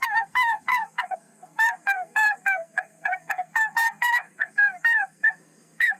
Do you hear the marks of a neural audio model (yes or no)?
yes